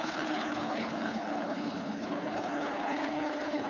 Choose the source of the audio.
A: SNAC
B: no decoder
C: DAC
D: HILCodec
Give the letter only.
D